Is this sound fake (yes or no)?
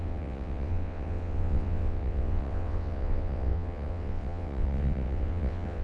yes